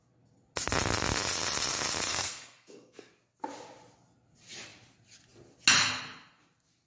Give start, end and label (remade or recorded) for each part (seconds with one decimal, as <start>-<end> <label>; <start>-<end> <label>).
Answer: 0.0-2.1 recorded; 2.1-3.1 remade; 3.1-6.9 recorded